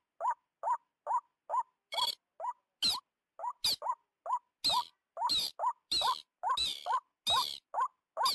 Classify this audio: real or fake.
real